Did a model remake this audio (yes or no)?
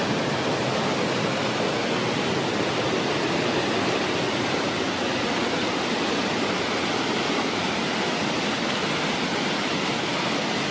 no